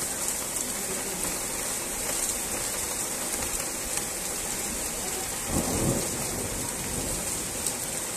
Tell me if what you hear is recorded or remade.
recorded